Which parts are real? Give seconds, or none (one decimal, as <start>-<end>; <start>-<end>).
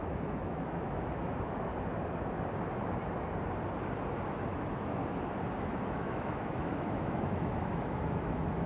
1.7-4.6; 5.0-5.6